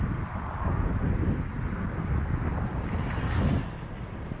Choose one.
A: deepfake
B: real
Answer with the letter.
B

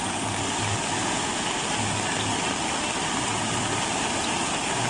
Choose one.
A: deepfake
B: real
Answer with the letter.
B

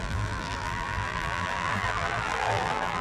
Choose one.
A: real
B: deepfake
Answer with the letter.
B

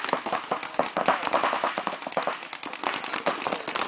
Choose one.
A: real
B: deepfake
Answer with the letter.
A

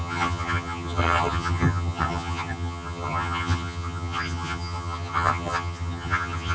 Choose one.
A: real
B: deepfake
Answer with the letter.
B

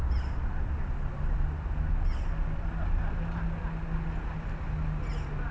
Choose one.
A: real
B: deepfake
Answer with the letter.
A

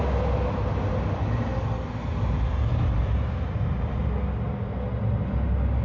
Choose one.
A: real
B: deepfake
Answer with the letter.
A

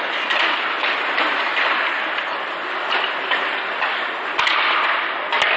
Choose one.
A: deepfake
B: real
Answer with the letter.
B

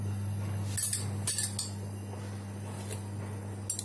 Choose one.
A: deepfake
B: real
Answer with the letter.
B